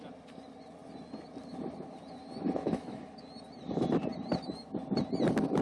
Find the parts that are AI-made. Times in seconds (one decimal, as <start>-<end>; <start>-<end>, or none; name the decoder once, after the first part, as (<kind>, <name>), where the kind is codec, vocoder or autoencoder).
2.6-3.3 (autoencoder, DAC-VAE)